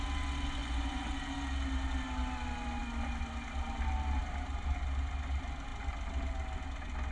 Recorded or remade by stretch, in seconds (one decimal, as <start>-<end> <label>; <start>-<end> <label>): 0.0-0.6 recorded; 0.6-1.1 remade; 1.1-7.1 recorded